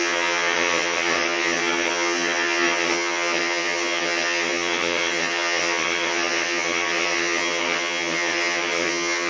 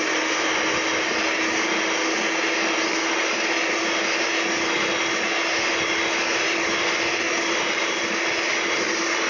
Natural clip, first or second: second